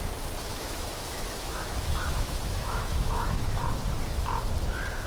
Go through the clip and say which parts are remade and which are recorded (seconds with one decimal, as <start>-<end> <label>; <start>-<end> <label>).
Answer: 0.0-0.5 recorded; 0.5-3.6 remade; 3.6-5.1 recorded